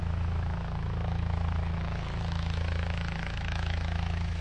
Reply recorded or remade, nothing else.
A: remade